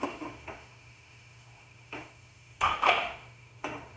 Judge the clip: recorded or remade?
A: remade